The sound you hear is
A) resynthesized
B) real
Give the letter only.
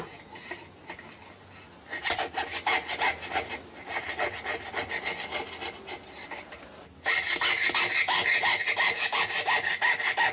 B